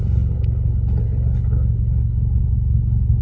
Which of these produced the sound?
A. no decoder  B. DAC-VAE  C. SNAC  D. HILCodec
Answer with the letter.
D